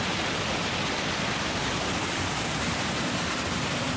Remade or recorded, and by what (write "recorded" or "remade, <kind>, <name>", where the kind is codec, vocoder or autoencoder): remade, vocoder, BigVGAN v2